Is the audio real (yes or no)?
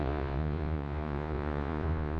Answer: no